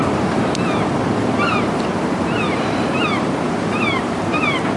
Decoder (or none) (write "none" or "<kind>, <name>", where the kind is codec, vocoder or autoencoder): vocoder, BigVGAN v2